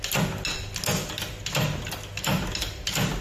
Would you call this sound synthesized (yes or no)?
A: no